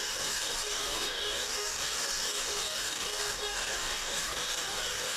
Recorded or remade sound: remade